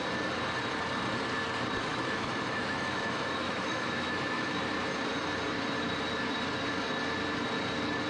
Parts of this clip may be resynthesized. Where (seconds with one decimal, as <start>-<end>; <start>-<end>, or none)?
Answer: 1.9-4.6